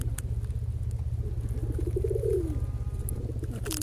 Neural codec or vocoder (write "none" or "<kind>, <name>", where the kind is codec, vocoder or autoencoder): none